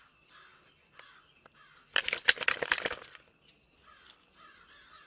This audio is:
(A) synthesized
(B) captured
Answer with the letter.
B